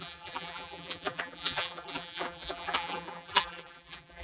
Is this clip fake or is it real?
fake